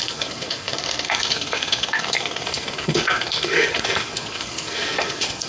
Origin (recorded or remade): remade